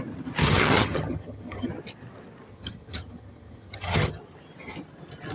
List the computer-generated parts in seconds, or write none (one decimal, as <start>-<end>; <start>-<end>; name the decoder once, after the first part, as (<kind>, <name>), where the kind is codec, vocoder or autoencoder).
0.4-1.7 (vocoder, HiFi-GAN); 2.5-4.2